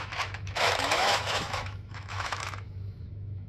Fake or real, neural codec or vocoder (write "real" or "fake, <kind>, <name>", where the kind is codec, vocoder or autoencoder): fake, autoencoder, DAC-VAE